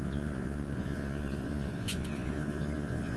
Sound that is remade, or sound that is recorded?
remade